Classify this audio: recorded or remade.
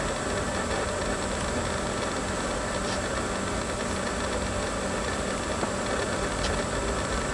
recorded